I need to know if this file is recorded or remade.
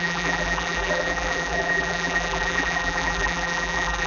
remade